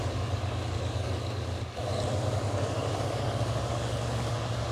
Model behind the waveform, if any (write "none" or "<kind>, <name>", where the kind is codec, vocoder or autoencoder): codec, DAC